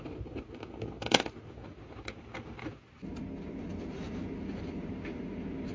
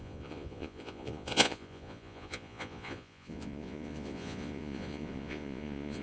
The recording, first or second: first